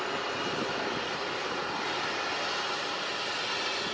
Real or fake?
real